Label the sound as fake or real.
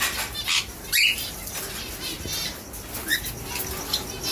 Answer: real